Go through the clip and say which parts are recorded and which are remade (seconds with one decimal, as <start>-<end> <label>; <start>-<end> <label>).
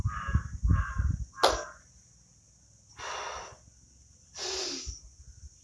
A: 0.0-5.6 recorded